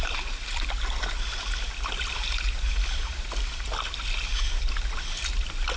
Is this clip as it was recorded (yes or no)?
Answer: yes